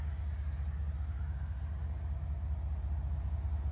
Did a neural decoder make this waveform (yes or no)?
no